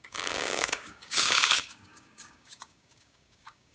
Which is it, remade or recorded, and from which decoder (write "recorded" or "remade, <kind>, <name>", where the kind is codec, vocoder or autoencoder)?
remade, codec, DAC